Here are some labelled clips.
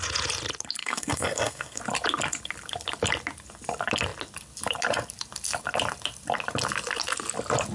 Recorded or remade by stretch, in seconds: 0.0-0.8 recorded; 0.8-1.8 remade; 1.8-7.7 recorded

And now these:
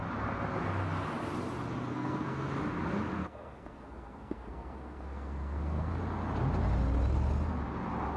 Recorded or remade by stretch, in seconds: 0.0-1.9 recorded; 1.9-2.5 remade; 2.5-3.2 recorded; 3.2-5.9 remade; 5.9-8.2 recorded